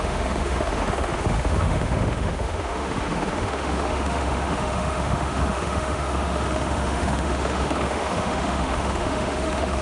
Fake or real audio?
fake